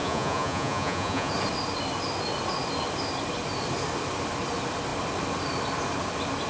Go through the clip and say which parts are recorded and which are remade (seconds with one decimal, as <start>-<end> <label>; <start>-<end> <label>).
0.0-1.3 remade; 1.3-6.5 recorded